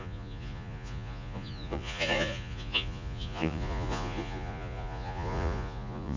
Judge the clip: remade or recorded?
remade